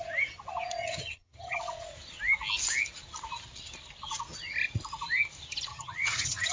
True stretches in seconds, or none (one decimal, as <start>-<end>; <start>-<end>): 0.0-0.8; 1.6-5.7